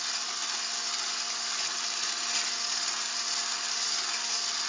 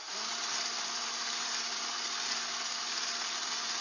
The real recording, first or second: first